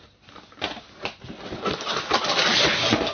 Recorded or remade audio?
recorded